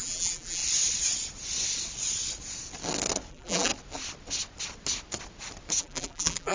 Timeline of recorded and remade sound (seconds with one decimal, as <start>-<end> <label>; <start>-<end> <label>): 0.0-0.6 remade; 0.6-3.3 recorded; 3.3-3.7 remade; 3.7-5.8 recorded; 5.8-6.5 remade